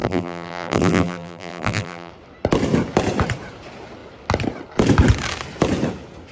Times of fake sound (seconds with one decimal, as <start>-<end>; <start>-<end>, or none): 0.0-2.1